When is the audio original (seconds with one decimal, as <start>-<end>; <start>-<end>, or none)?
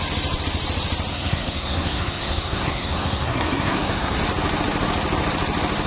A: 0.0-1.1; 4.2-5.9